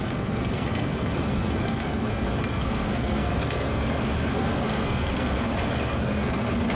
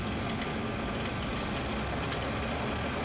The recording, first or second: second